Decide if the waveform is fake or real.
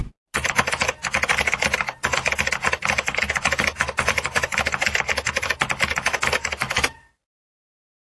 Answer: real